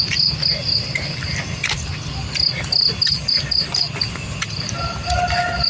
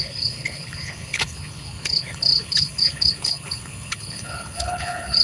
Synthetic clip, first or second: second